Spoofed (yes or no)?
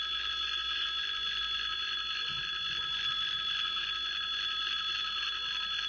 no